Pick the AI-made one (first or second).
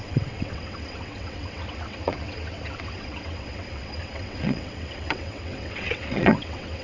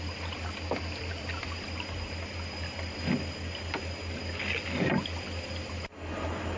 first